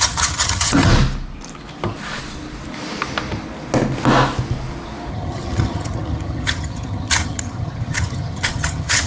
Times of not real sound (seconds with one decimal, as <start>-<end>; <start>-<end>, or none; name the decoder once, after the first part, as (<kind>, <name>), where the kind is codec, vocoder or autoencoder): 0.0-0.9 (vocoder, HiFi-GAN); 5.1-9.1